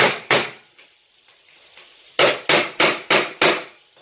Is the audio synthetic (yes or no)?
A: no